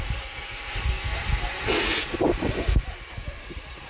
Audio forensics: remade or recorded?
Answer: remade